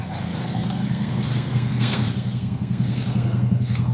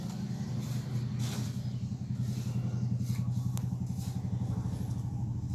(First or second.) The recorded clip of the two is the second